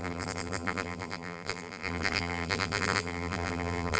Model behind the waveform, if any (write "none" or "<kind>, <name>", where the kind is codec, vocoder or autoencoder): vocoder, BigVGAN v2